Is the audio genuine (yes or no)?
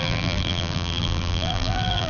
no